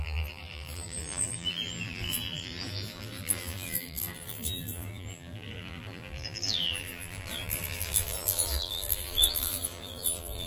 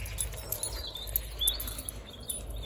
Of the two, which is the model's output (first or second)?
first